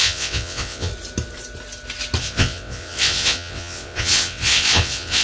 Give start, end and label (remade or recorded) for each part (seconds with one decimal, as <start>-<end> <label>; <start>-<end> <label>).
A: 0.0-0.9 remade; 0.9-2.2 recorded; 2.2-5.2 remade